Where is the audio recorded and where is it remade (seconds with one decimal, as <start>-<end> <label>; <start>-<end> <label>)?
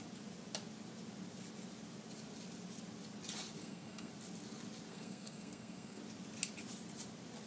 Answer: 0.0-3.6 recorded; 3.6-4.1 remade; 4.1-4.9 recorded; 4.9-6.0 remade; 6.0-7.5 recorded